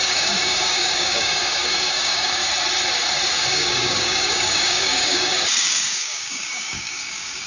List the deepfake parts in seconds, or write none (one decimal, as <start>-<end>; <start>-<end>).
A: 0.0-2.4; 3.5-7.5